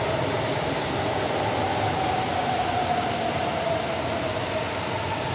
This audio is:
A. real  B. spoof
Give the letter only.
A